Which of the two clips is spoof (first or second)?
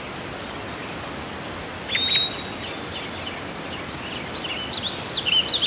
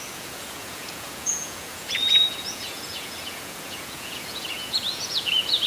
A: second